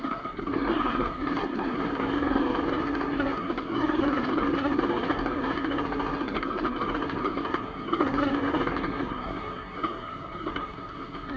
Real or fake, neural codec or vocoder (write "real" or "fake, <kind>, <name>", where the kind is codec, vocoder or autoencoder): fake, codec, SNAC